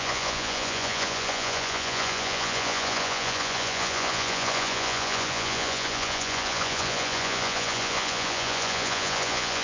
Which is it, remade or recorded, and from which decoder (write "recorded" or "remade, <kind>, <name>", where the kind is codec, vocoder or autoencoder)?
remade, vocoder, Vocos